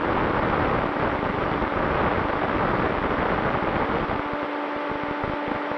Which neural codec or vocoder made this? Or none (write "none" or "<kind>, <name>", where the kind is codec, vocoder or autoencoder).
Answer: none